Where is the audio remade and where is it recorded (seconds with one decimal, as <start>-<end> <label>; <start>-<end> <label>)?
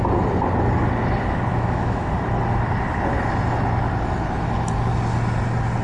0.0-1.5 recorded; 1.5-2.1 remade; 2.1-5.8 recorded